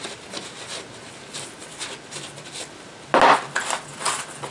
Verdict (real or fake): real